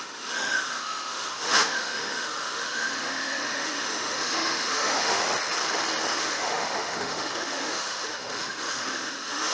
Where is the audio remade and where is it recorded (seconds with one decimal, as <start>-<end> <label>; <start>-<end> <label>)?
0.0-5.2 remade; 5.2-6.1 recorded; 6.1-9.5 remade